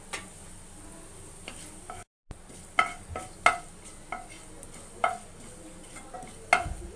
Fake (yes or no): no